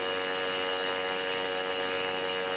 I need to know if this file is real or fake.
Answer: real